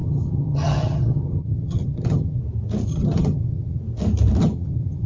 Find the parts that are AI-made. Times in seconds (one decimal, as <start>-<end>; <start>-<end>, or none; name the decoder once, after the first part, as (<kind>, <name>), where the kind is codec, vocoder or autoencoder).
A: 0.0-2.4 (vocoder, HiFi-GAN); 2.9-3.8; 4.4-5.1